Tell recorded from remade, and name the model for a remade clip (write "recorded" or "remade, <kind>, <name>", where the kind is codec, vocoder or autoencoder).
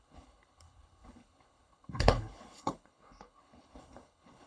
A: remade, codec, HILCodec